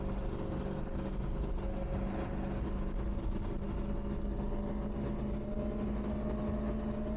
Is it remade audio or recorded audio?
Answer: recorded